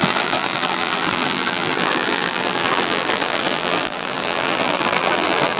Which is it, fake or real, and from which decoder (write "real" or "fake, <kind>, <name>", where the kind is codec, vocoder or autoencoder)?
fake, vocoder, BigVGAN v2